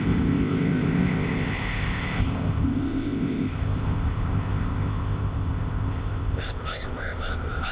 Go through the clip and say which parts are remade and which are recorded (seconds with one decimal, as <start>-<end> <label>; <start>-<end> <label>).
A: 0.0-7.7 remade